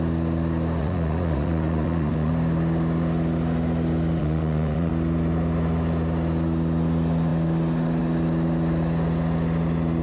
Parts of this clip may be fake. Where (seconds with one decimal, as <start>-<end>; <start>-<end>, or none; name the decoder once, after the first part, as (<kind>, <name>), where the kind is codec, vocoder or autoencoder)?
0.8-2.3 (vocoder, Vocos); 4.2-4.9